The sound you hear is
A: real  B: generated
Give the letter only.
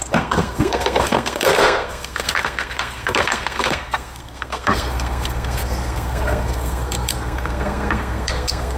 B